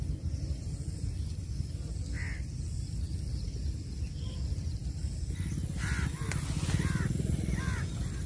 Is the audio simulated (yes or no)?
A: no